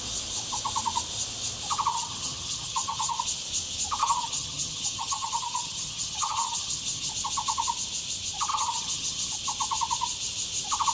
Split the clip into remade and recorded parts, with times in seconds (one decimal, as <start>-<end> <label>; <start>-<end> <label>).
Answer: 0.0-1.9 recorded; 1.9-3.2 remade; 3.2-4.0 recorded; 4.0-7.1 remade; 7.1-8.5 recorded; 8.5-9.3 remade; 9.3-10.9 recorded